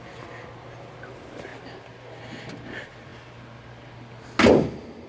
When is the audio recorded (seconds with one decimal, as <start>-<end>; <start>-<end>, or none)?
0.0-5.1